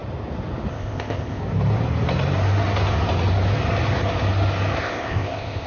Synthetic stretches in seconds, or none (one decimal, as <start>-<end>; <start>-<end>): 0.7-1.4; 4.8-5.7